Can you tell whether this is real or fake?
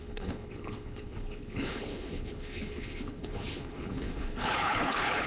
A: fake